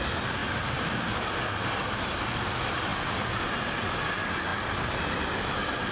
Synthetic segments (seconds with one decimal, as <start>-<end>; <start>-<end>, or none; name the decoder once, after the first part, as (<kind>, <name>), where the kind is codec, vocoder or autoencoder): none